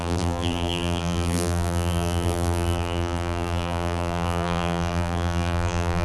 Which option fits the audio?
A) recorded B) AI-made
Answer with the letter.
B